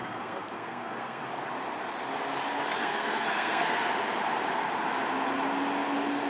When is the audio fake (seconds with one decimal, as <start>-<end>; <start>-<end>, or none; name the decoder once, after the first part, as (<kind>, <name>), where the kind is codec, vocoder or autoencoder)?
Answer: 0.0-1.2 (codec, SNAC); 2.8-3.8